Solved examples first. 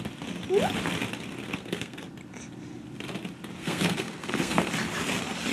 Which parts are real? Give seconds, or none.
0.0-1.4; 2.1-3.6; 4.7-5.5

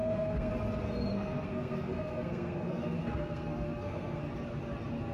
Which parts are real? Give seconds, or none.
0.5-1.1; 4.2-5.1

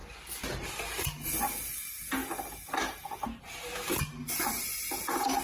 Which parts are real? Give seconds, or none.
0.0-5.4

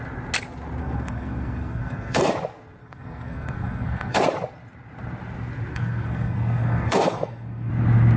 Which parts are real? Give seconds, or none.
0.0-0.8; 2.3-2.8; 4.2-5.7; 7.7-8.2

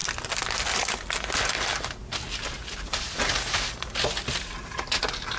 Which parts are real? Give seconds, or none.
0.0-5.4

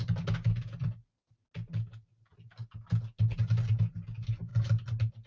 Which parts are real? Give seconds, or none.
0.0-5.3

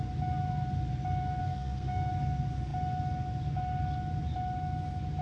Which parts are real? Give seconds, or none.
0.0-1.4; 2.1-5.2